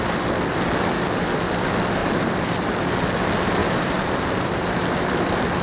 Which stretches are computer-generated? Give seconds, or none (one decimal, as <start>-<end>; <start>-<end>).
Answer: 2.0-2.9; 3.6-5.1